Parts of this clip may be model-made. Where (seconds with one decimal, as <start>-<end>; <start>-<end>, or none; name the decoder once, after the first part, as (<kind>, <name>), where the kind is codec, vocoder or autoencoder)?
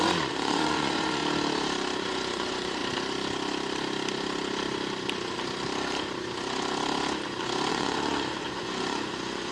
0.0-1.2 (vocoder, Vocos); 2.0-2.8; 7.7-9.5